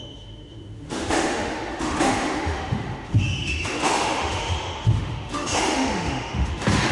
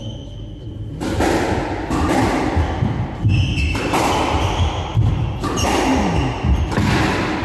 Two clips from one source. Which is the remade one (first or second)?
first